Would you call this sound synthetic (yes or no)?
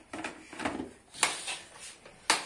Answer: no